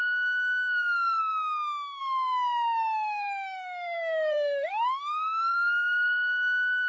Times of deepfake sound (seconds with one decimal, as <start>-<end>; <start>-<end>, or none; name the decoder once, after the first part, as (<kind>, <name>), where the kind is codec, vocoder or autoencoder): 0.0-1.3 (codec, SNAC); 2.0-6.9